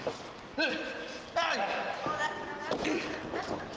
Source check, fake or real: real